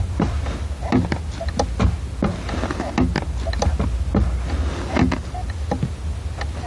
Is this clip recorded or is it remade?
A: recorded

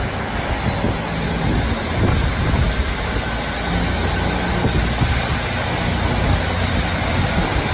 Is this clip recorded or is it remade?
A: recorded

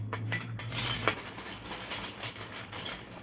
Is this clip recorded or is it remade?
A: recorded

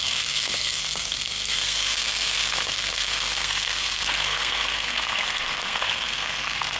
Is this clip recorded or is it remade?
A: remade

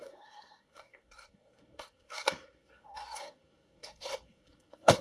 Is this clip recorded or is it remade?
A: remade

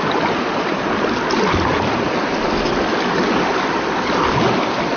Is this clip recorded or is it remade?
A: recorded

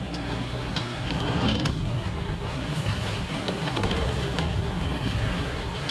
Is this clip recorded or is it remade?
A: remade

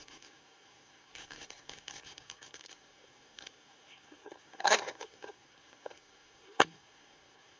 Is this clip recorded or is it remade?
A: remade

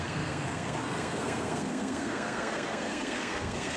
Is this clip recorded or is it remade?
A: remade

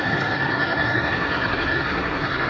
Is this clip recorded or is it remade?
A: remade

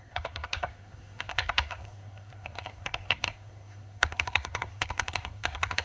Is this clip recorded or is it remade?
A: remade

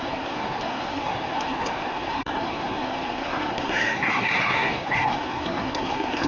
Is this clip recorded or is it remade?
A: remade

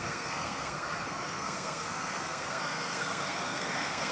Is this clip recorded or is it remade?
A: remade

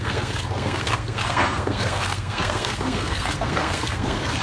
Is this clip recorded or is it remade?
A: remade